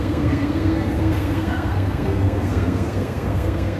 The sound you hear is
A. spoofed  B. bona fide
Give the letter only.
A